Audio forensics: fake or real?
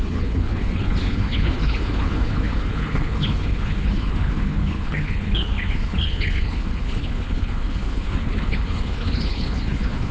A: fake